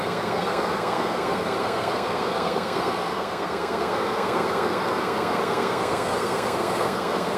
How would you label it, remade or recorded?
remade